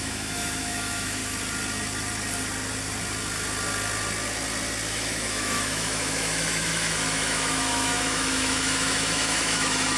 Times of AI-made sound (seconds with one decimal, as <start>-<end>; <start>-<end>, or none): 0.0-1.2; 4.9-10.0